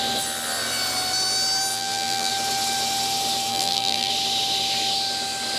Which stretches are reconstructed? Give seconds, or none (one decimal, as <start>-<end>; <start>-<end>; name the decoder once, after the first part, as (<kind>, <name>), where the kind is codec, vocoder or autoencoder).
1.7-2.3 (vocoder, BigVGAN v2); 3.5-4.1